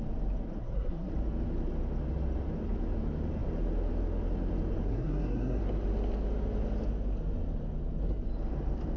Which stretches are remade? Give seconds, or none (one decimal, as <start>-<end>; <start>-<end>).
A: 0.6-1.1; 4.8-5.6

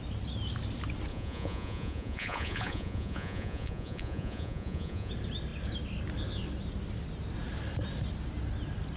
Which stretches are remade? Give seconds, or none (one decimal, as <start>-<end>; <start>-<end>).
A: 1.1-5.1

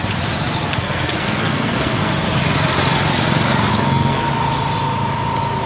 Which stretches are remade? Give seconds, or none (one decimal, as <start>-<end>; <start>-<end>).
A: 0.7-2.1; 3.7-4.3

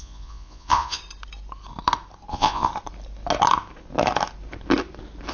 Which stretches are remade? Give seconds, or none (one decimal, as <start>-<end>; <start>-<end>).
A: 0.0-1.0; 2.3-2.7

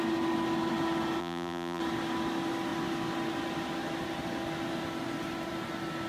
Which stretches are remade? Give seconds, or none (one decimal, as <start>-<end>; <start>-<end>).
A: 1.2-1.8

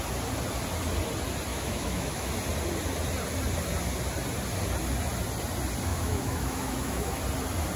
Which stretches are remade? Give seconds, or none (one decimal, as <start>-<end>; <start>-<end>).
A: 1.5-2.3; 5.9-7.2